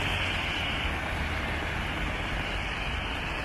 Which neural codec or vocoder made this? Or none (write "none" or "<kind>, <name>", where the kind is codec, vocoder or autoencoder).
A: none